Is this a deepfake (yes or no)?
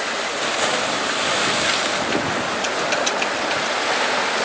no